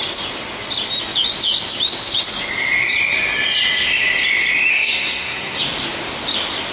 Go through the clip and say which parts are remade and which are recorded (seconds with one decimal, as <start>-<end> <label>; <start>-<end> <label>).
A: 0.0-4.7 recorded; 4.7-5.6 remade; 5.6-6.7 recorded